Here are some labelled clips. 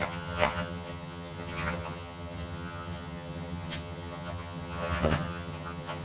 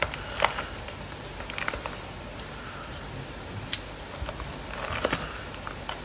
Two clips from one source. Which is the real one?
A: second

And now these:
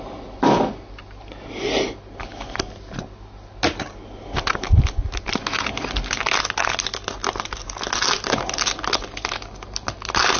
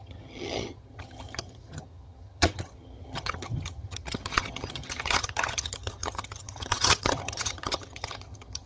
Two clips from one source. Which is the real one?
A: first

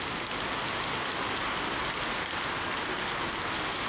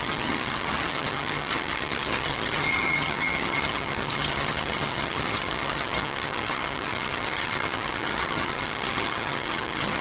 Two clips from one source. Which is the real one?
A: first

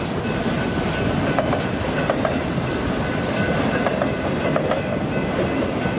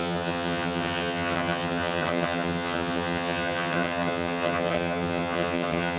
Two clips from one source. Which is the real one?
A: first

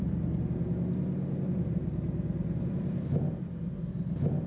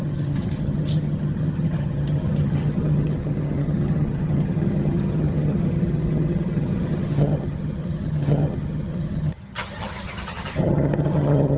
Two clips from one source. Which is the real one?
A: first